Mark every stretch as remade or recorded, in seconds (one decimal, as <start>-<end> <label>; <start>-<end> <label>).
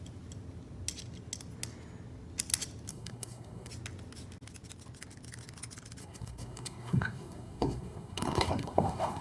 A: 0.0-2.9 recorded; 2.9-3.7 remade; 3.7-6.0 recorded; 6.0-9.2 remade